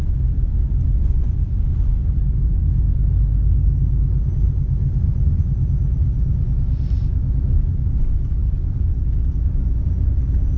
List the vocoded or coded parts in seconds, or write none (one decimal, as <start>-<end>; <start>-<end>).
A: 4.8-5.4